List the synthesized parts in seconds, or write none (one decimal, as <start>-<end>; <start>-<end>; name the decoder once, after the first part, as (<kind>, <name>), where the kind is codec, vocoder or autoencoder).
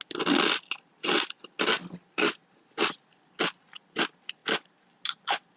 none